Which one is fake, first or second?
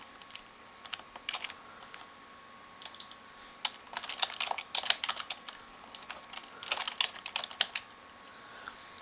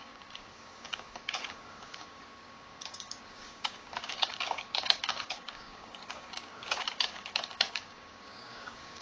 second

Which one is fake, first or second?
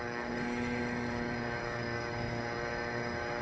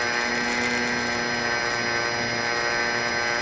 first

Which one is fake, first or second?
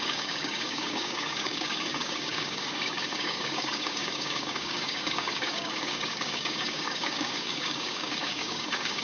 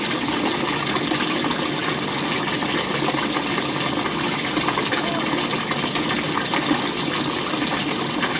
first